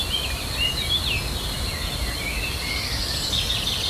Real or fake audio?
real